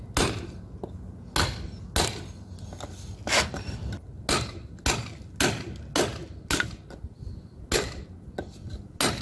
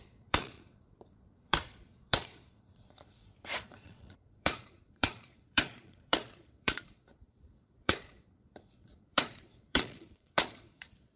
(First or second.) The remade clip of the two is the second